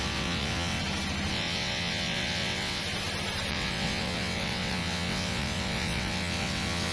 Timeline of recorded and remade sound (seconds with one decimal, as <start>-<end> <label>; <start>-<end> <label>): 0.0-0.8 remade; 0.8-1.3 recorded; 1.3-2.8 remade; 2.8-3.5 recorded; 3.5-6.9 remade